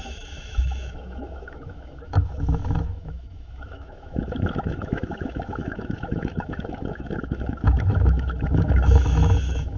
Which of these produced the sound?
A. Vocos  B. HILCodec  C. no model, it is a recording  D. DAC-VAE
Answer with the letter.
D